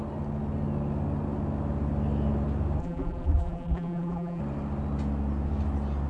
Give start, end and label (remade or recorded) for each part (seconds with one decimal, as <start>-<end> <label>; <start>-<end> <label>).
0.0-2.8 recorded; 2.8-4.4 remade; 4.4-6.1 recorded